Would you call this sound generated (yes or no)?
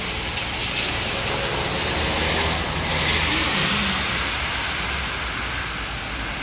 no